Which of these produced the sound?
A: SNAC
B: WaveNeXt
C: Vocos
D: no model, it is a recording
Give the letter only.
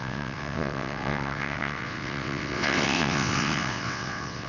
B